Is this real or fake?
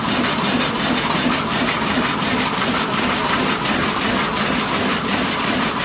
real